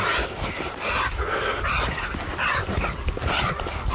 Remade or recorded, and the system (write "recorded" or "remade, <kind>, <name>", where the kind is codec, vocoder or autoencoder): recorded